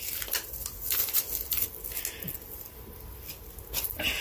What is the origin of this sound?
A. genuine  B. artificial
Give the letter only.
A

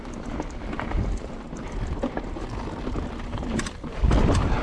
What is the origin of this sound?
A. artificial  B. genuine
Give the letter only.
B